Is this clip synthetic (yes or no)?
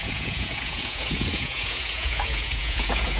yes